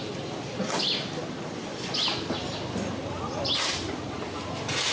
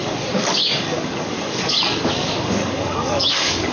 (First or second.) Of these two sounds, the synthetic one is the second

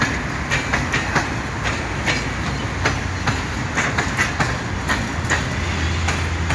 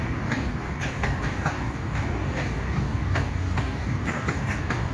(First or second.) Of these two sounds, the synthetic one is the second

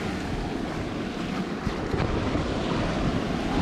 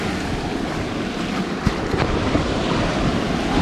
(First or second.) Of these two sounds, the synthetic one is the second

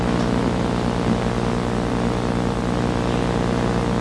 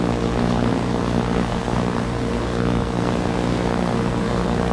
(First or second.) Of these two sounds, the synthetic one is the second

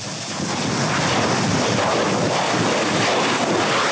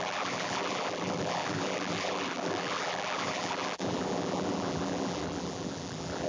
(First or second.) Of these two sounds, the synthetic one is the second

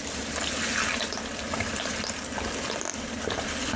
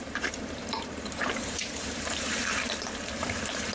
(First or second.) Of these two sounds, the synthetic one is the second